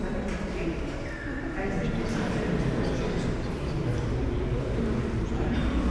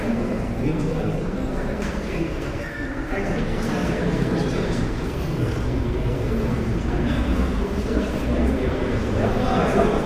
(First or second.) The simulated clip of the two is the second